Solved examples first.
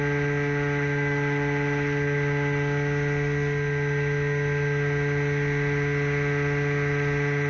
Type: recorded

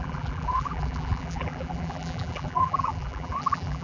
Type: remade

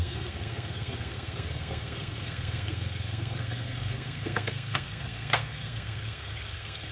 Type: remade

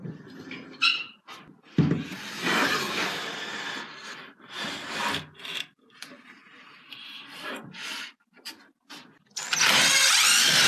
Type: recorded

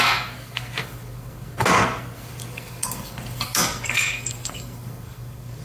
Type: remade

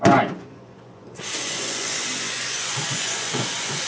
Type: remade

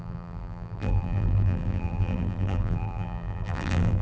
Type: remade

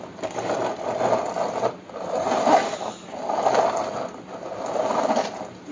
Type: recorded